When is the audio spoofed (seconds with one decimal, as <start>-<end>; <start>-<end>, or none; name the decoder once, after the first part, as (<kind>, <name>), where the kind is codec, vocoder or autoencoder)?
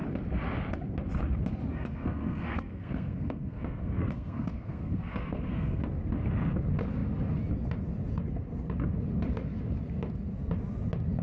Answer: 1.7-5.8 (codec, SNAC)